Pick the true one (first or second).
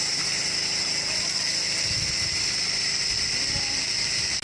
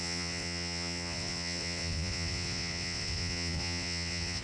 first